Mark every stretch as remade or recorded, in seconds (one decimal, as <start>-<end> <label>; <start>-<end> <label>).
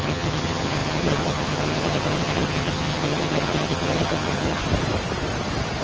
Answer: 0.0-4.6 remade; 4.6-5.8 recorded